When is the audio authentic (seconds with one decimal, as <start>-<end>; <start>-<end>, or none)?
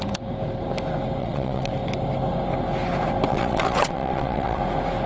0.0-1.2; 1.7-3.3; 4.6-5.1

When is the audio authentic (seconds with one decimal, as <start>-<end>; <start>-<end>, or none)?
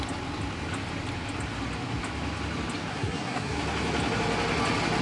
0.0-2.9; 3.6-5.0